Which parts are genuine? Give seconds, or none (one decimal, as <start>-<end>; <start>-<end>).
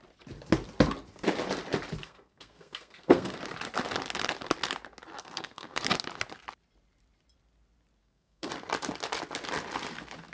0.0-2.0; 3.4-5.2; 5.8-8.0; 8.5-10.3